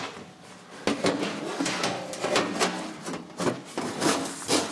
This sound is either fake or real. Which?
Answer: real